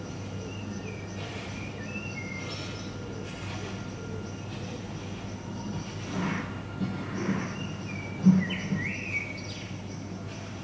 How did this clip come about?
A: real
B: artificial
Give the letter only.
A